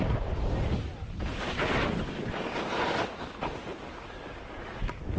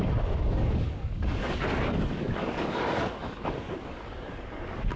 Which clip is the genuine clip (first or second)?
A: first